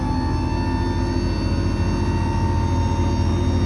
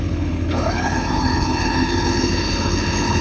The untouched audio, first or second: first